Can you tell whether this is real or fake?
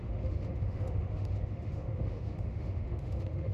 fake